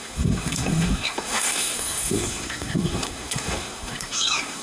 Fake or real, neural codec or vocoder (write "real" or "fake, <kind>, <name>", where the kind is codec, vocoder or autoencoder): fake, codec, SNAC